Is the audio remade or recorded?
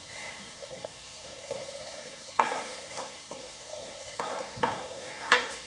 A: remade